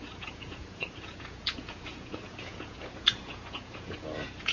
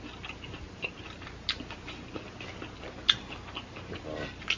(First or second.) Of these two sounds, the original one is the second